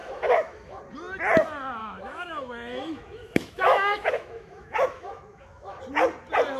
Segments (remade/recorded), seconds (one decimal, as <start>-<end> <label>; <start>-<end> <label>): 0.0-0.8 remade; 0.8-1.8 recorded; 1.8-5.8 remade; 5.8-6.6 recorded